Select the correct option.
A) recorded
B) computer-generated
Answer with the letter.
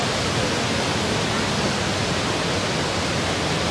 A